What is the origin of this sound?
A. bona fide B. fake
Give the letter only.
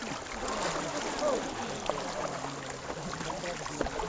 A